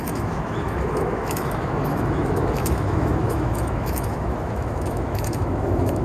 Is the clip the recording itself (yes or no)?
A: no